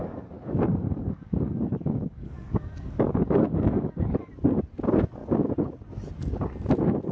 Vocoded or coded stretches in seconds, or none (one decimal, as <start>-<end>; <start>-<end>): 0.0-4.3